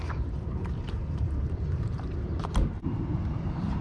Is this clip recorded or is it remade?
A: remade